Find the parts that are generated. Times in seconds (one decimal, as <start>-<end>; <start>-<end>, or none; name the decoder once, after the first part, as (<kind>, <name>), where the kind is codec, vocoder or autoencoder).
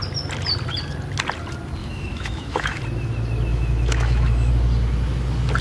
1.8-2.8 (autoencoder, DAC-VAE); 3.5-4.5